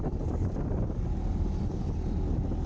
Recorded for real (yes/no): yes